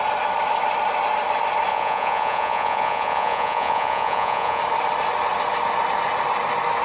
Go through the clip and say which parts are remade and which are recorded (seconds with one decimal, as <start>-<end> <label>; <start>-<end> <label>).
0.0-1.7 recorded; 1.7-4.6 remade; 4.6-6.8 recorded